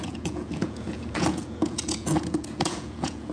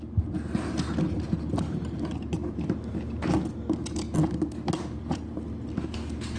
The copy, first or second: first